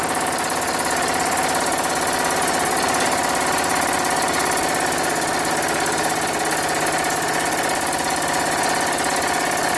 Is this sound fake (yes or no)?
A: no